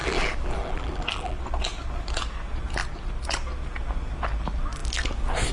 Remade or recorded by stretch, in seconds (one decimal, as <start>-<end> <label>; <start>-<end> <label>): 0.0-1.4 remade; 1.4-5.5 recorded